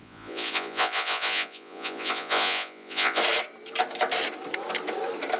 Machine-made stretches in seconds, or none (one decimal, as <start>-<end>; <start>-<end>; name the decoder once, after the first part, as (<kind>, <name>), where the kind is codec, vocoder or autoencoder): 0.0-3.2 (vocoder, Vocos)